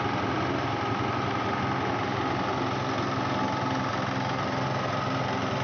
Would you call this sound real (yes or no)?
yes